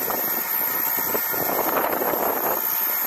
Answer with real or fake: real